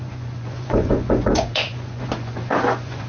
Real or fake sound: fake